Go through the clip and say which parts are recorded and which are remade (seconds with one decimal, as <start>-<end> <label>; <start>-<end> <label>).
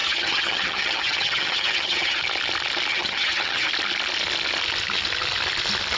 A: 0.0-2.2 remade; 2.2-2.9 recorded; 2.9-3.7 remade; 3.7-6.0 recorded